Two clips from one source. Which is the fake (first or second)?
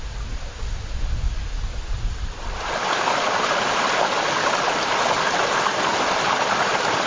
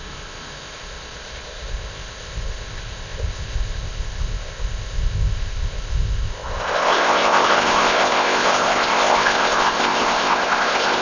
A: second